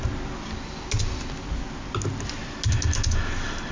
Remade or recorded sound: recorded